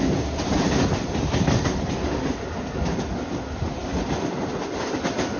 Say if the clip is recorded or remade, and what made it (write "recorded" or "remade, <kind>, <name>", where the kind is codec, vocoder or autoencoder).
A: recorded